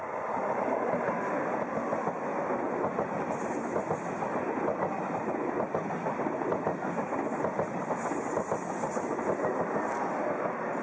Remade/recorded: remade